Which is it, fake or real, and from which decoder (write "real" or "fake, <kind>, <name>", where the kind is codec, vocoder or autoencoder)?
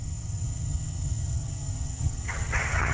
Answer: fake, vocoder, HiFi-GAN